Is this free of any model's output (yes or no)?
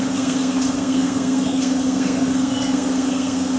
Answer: no